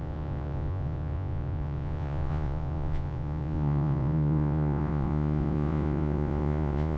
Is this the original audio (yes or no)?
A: no